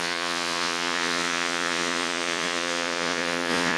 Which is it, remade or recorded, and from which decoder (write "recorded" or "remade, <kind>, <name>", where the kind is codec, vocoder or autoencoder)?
remade, vocoder, Vocos